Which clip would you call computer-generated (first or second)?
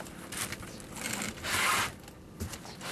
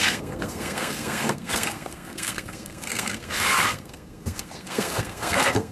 second